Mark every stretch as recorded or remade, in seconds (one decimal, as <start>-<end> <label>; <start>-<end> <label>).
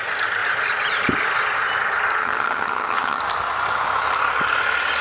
0.0-2.2 recorded; 2.2-3.2 remade; 3.2-5.0 recorded